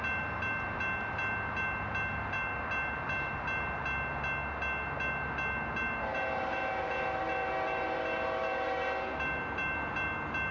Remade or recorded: recorded